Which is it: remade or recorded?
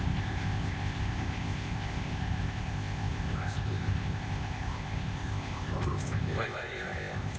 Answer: remade